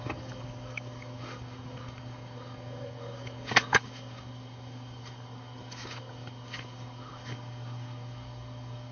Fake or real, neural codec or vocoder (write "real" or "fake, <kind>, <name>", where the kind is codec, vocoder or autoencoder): fake, codec, DAC